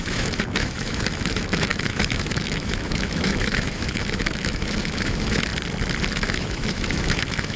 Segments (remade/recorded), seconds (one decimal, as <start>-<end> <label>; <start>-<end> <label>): 0.0-5.5 remade; 5.5-6.1 recorded; 6.1-7.6 remade